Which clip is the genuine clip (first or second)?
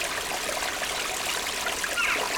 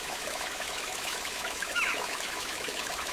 first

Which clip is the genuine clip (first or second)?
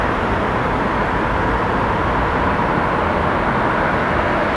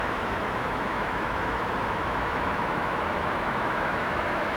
first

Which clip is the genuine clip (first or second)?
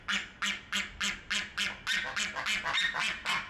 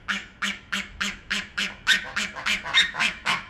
first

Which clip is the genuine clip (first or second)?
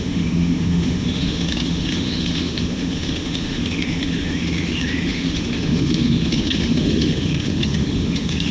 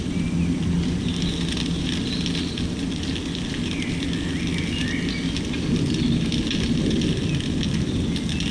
second